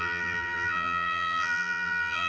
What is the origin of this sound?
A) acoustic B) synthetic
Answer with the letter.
B